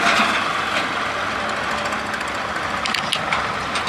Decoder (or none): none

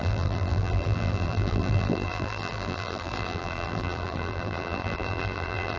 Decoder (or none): vocoder, BigVGAN v2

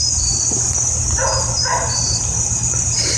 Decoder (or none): vocoder, BigVGAN v2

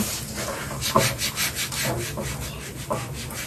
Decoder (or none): none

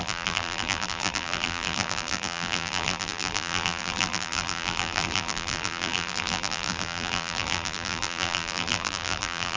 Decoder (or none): vocoder, BigVGAN v2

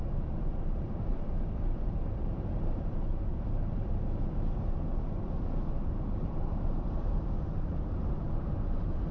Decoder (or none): vocoder, BigVGAN v2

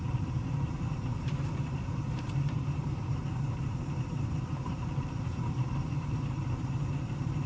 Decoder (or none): vocoder, BigVGAN v2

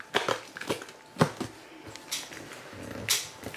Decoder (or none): none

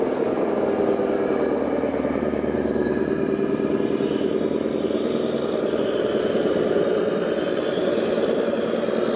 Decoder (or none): none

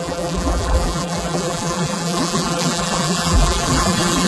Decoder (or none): vocoder, BigVGAN v2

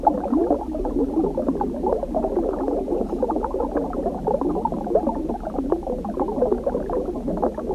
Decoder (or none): none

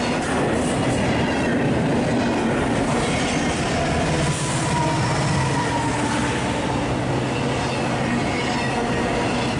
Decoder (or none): none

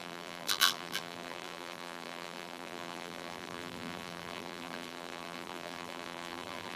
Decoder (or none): vocoder, BigVGAN v2